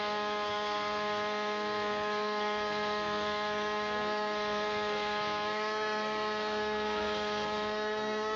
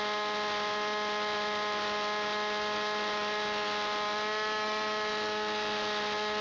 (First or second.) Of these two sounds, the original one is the second